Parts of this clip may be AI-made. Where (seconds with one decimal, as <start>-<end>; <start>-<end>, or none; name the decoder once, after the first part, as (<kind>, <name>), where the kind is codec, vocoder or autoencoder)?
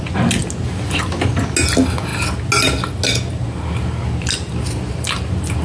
none